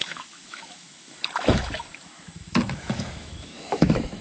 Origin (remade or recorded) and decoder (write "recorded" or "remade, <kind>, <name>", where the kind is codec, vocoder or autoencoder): remade, autoencoder, DAC-VAE